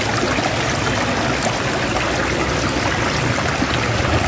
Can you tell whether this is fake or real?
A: real